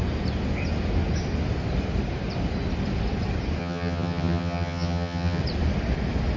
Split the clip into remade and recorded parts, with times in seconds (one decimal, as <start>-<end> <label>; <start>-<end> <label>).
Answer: 0.0-3.6 recorded; 3.6-5.4 remade; 5.4-6.4 recorded